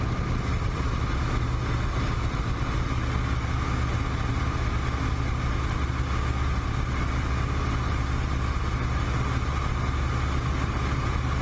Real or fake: real